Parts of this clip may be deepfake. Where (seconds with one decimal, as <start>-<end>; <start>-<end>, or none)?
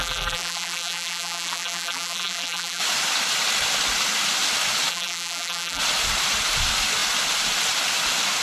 0.0-2.8; 4.9-5.8